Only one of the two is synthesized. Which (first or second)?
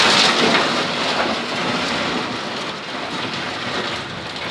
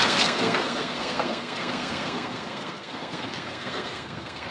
second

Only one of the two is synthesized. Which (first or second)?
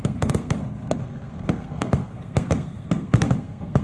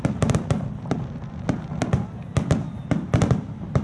first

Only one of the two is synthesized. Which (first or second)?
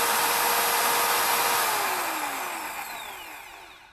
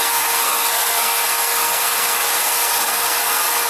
second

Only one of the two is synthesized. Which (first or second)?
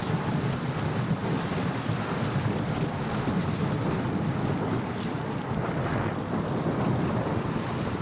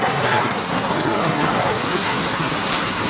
second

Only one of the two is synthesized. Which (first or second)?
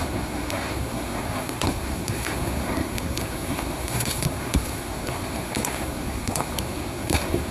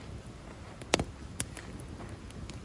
first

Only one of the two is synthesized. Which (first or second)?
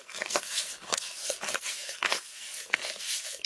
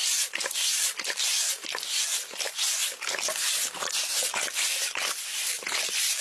first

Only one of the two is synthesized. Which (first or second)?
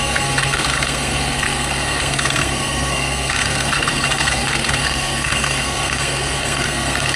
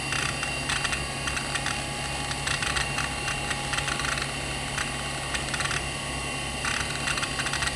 first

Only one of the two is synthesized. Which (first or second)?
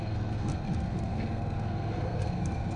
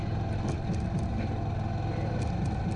first